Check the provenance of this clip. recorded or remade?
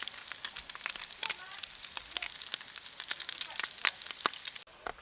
recorded